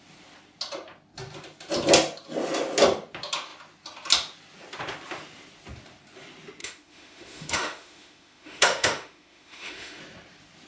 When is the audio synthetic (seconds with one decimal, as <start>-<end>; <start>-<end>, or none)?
6.6-10.0